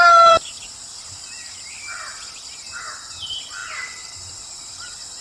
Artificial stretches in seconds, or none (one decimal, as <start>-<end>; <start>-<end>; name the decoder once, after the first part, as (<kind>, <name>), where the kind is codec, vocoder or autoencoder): none